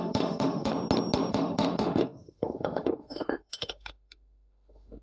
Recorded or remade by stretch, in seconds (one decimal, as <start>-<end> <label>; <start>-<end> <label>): 0.0-0.7 remade; 0.7-1.3 recorded; 1.3-5.0 remade